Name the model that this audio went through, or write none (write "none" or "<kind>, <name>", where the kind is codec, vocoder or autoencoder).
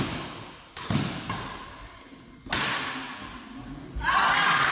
none